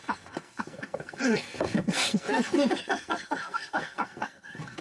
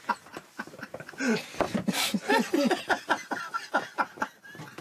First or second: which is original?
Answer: second